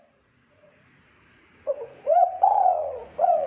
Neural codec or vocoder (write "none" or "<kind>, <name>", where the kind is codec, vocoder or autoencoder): vocoder, Vocos